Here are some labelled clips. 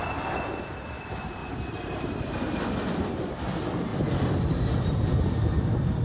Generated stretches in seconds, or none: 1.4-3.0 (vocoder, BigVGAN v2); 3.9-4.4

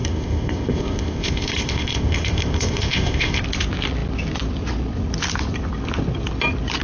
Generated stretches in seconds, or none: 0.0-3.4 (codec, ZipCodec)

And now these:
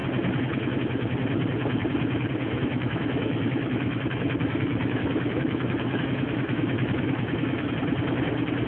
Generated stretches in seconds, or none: 2.5-7.7 (autoencoder, DAC-VAE)

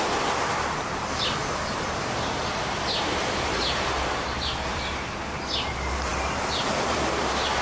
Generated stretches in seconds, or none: 1.4-4.8 (vocoder, BigVGAN v2)